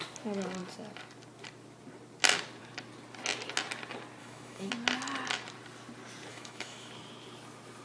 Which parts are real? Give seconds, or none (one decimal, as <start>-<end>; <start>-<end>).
0.0-4.2; 4.7-6.3; 6.9-7.8